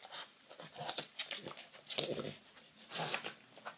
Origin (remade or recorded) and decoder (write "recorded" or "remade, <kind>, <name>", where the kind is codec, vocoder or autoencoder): recorded